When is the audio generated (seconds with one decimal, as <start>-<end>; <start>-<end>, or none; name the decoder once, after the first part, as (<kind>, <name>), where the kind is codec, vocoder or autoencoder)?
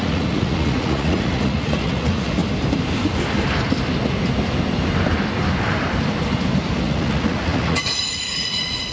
0.0-2.4 (vocoder, Vocos); 6.8-8.9